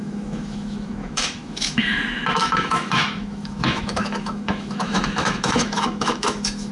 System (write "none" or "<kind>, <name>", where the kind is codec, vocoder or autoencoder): autoencoder, DAC-VAE